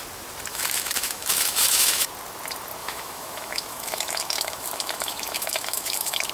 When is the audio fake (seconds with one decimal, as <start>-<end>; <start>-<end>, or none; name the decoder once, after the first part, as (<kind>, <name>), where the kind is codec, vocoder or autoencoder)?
0.5-2.1 (autoencoder, DAC-VAE); 2.8-6.3